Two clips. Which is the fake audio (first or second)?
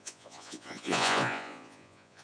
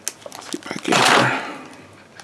first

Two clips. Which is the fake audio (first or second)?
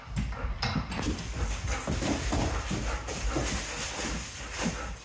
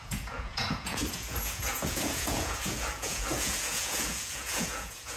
second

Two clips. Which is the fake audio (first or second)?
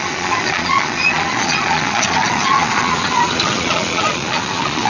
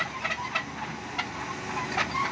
first